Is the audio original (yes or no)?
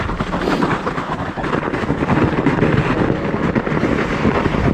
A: yes